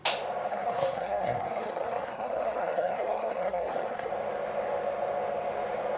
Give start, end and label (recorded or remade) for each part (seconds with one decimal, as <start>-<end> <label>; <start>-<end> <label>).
0.0-0.5 recorded; 0.5-4.1 remade; 4.1-6.0 recorded